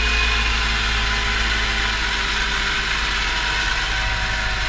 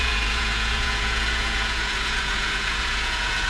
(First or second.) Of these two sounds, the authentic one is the first